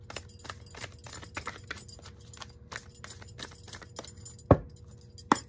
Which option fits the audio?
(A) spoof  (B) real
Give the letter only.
B